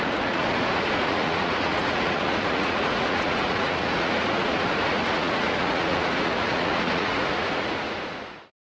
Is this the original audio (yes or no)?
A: no